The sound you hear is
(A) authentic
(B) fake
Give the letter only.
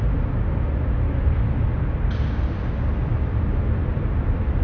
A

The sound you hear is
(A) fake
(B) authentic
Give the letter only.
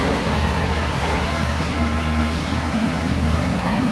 A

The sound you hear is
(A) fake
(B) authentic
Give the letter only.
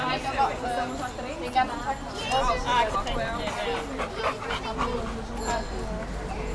B